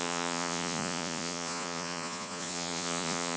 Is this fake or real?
fake